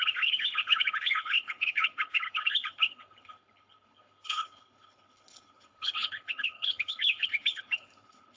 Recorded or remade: remade